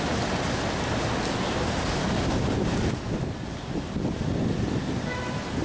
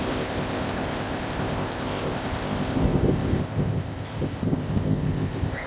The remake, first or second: second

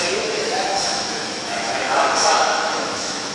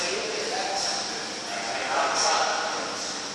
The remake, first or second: first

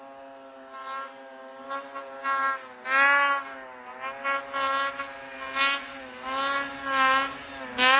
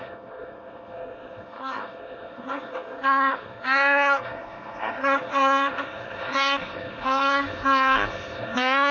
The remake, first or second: second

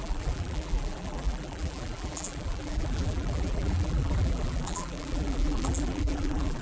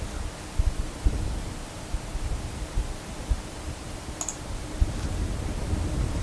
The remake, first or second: first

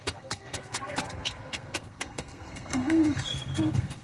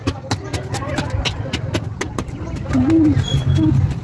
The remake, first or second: first